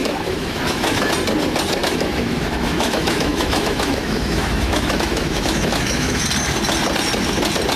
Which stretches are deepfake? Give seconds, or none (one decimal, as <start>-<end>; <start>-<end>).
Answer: 0.0-1.1; 1.8-6.2

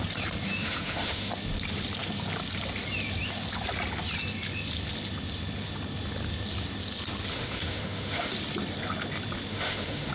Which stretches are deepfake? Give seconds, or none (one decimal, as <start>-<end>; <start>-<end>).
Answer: 0.6-1.3; 7.3-8.3; 9.5-10.1

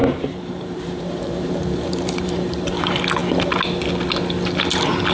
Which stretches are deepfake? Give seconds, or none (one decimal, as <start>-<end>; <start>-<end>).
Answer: 0.0-2.8